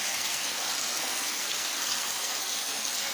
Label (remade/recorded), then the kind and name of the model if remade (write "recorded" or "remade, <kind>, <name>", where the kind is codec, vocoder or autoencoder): remade, codec, SNAC